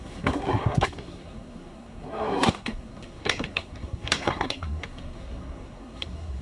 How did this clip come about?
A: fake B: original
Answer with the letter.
A